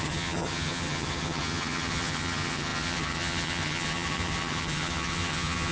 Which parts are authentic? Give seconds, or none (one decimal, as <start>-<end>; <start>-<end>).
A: none